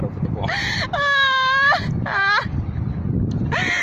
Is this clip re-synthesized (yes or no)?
no